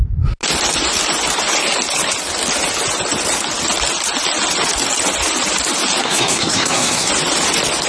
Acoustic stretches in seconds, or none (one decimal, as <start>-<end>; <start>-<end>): 0.0-6.0; 7.1-7.9